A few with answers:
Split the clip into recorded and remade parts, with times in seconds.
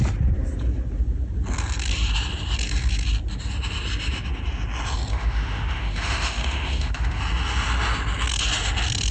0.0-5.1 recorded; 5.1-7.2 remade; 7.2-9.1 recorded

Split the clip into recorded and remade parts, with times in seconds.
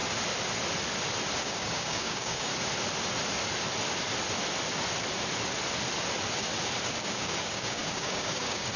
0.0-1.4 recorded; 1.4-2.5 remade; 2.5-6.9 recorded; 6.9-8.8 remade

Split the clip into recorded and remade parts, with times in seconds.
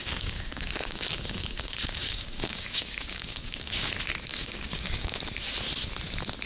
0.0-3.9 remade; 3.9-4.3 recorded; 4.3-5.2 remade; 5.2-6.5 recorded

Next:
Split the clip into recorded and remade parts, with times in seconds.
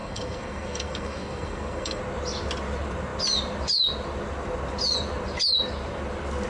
0.0-2.0 remade; 2.0-6.5 recorded